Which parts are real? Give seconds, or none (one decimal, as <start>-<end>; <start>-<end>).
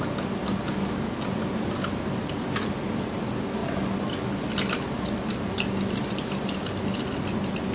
0.0-7.7